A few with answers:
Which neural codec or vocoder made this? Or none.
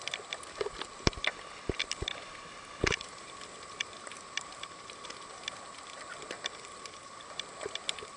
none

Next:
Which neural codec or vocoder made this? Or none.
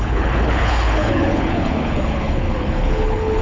codec, HILCodec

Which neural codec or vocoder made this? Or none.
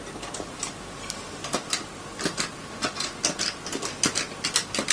none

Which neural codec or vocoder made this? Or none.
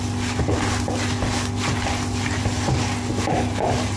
none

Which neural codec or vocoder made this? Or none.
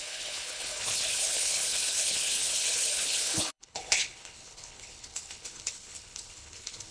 codec, HILCodec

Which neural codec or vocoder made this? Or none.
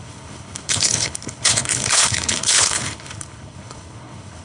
codec, HILCodec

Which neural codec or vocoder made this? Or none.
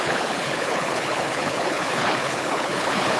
codec, HILCodec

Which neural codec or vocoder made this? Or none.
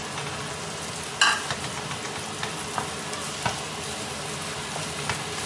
none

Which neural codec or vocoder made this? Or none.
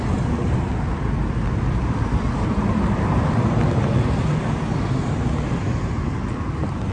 none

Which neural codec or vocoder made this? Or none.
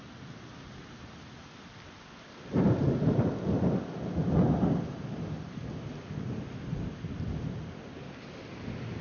none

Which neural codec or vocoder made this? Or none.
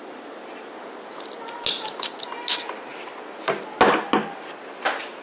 none